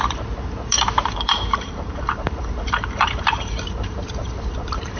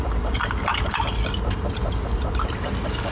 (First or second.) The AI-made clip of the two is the first